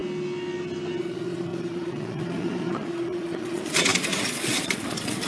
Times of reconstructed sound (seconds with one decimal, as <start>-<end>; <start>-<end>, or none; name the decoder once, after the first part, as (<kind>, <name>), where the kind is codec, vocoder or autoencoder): 1.0-5.3 (vocoder, Vocos)